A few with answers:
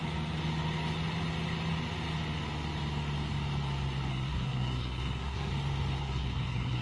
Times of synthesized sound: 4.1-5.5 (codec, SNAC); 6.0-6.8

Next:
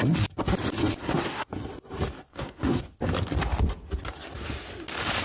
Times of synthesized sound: 1.0-1.5 (codec, SNAC); 2.3-2.8